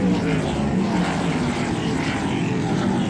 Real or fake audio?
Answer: real